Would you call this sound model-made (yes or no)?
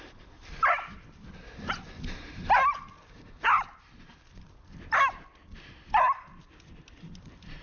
no